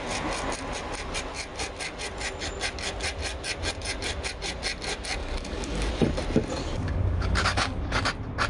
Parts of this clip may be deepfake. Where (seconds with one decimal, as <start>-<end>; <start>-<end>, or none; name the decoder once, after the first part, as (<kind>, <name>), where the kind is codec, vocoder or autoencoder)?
5.2-5.9 (codec, DAC); 6.6-8.1